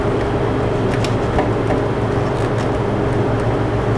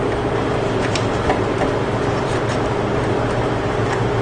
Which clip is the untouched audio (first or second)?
first